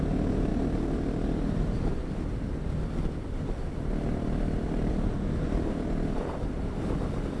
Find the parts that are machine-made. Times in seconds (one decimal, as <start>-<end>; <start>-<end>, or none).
none

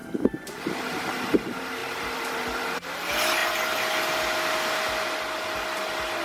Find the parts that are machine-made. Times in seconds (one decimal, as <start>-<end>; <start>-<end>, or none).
1.8-2.6